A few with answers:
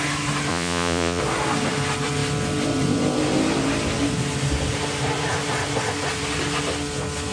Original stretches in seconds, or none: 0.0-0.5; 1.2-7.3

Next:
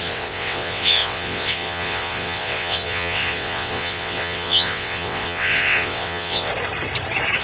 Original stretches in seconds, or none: 6.5-7.4

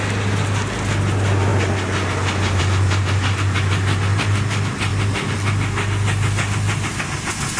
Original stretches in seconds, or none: 0.0-7.6